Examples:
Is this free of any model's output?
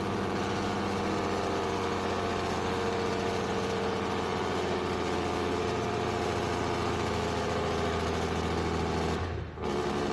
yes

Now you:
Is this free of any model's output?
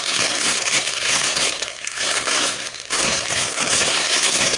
no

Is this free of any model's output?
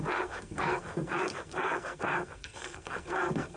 no